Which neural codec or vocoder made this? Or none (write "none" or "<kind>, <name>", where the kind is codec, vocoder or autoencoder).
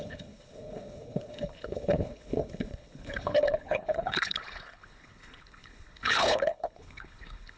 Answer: codec, HILCodec